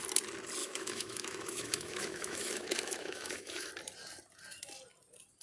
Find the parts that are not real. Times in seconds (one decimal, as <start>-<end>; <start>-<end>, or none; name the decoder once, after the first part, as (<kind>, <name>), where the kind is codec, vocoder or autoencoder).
0.6-3.7 (autoencoder, DAC-VAE)